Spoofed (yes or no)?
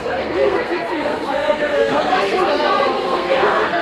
yes